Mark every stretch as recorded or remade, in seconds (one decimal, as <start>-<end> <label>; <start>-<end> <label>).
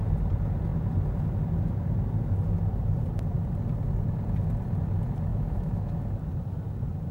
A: 0.0-5.3 recorded; 5.3-5.9 remade; 5.9-7.1 recorded